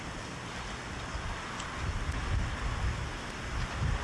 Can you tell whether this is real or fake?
real